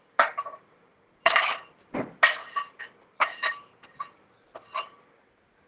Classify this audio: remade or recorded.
recorded